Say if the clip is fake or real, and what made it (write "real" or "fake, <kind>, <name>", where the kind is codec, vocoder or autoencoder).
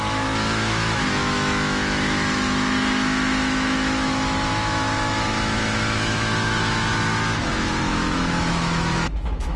fake, autoencoder, DAC-VAE